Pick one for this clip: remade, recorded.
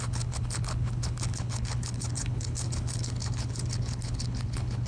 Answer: remade